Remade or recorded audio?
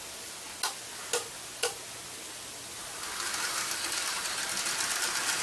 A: recorded